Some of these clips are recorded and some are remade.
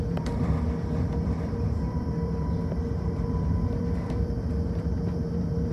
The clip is remade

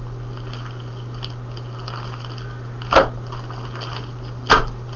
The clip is recorded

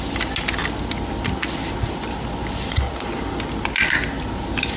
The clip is recorded